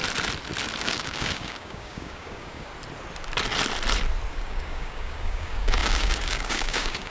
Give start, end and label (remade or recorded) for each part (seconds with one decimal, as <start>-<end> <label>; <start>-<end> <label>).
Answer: 0.0-0.8 recorded; 0.8-2.7 remade; 2.7-4.3 recorded; 4.3-7.1 remade

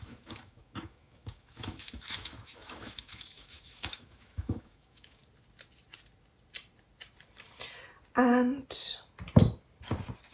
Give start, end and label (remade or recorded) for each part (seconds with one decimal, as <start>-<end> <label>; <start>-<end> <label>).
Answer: 0.0-5.2 remade; 5.2-10.3 recorded

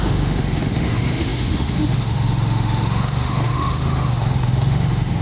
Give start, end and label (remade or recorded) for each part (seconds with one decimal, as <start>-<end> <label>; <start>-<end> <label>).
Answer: 0.0-5.2 remade

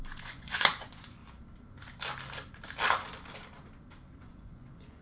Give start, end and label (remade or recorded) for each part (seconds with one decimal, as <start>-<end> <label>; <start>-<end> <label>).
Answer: 0.0-1.2 remade; 1.2-4.2 recorded; 4.2-5.0 remade

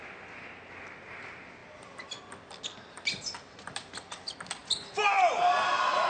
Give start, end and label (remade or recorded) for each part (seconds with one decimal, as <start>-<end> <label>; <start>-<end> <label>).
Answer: 0.0-6.1 recorded

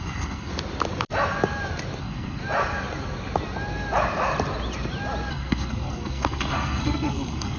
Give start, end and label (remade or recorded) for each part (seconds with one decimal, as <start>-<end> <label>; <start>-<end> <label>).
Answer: 0.0-0.5 remade; 0.5-2.0 recorded; 2.0-2.4 remade; 2.4-5.3 recorded; 5.3-7.6 remade

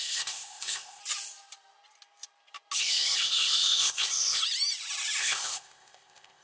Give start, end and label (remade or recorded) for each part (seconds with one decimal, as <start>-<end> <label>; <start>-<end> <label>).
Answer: 0.0-1.0 remade; 1.0-2.8 recorded; 2.8-4.4 remade; 4.4-5.2 recorded; 5.2-6.4 remade

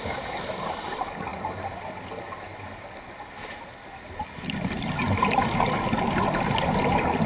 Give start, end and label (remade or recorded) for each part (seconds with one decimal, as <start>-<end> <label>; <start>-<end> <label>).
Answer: 0.0-7.3 recorded